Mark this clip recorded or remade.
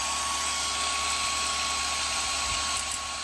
recorded